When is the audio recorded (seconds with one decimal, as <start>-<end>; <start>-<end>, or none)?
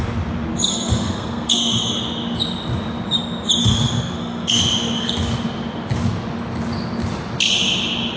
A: 0.0-0.7; 2.0-3.6; 4.6-8.2